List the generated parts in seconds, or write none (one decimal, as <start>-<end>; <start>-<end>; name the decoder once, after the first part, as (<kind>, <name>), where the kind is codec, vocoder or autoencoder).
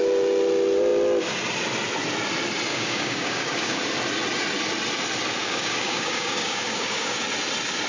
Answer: 2.7-3.8 (codec, DAC); 5.4-7.2